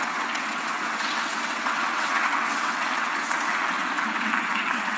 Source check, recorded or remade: remade